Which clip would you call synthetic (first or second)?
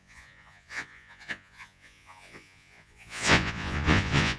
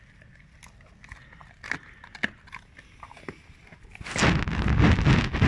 first